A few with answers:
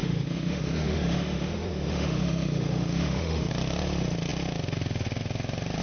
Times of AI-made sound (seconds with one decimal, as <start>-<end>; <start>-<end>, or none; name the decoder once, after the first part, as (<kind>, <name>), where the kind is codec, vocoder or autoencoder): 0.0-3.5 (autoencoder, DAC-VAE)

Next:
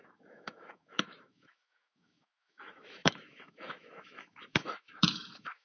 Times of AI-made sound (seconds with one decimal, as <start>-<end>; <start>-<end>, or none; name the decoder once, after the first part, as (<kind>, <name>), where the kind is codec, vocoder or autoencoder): 0.0-5.6 (autoencoder, DAC-VAE)

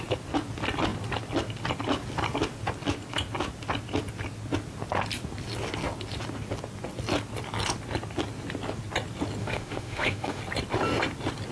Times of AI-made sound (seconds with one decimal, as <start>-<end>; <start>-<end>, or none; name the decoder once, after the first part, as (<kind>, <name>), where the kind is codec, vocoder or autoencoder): 9.4-10.4 (autoencoder, DAC-VAE)

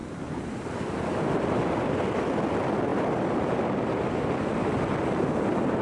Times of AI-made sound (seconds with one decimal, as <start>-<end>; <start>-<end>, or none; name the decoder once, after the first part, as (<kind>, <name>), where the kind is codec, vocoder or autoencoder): none

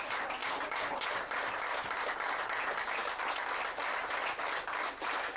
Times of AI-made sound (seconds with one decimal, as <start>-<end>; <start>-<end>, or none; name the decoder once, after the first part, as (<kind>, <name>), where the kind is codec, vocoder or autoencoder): none